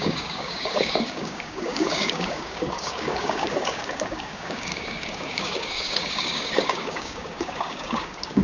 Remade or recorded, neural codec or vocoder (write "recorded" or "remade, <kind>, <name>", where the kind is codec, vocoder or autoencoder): remade, codec, DAC